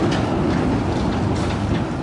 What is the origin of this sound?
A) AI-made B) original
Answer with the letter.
B